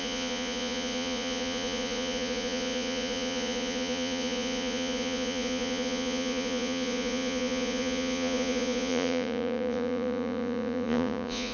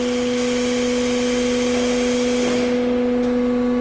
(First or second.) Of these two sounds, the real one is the second